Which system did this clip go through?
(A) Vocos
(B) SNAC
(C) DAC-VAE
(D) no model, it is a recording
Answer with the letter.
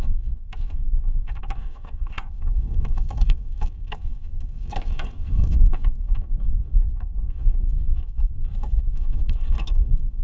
B